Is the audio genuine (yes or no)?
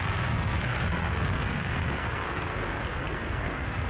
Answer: no